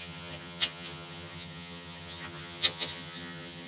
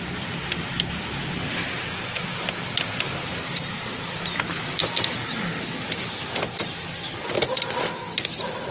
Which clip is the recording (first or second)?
second